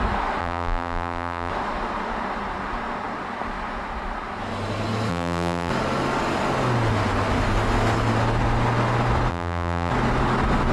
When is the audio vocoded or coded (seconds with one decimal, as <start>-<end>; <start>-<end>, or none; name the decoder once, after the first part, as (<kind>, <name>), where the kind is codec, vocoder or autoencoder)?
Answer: 0.4-1.5 (vocoder, BigVGAN v2); 5.1-5.7; 9.3-9.9